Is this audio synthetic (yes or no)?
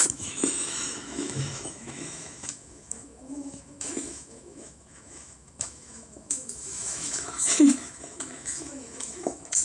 yes